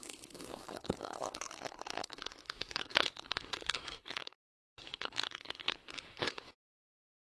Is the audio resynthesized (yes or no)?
yes